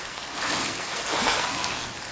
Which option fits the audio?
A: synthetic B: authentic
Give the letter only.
A